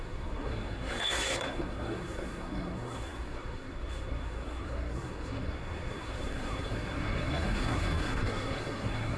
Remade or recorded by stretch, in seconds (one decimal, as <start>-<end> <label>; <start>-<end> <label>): 0.0-9.2 remade